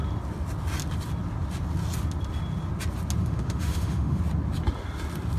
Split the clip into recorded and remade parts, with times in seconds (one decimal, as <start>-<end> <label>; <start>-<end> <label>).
0.0-3.2 recorded; 3.2-4.2 remade; 4.2-5.4 recorded